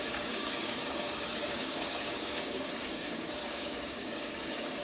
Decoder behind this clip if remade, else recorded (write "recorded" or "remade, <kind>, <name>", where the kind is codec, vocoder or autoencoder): remade, codec, DAC